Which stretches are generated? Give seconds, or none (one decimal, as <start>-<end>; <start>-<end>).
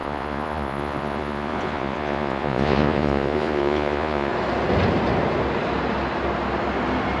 0.0-4.3